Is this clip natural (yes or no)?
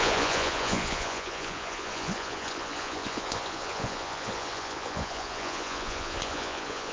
no